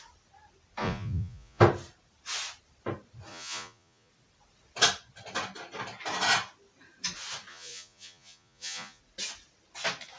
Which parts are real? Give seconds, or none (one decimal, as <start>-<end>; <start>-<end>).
0.0-0.8; 1.6-3.3; 4.1-7.5; 9.0-10.2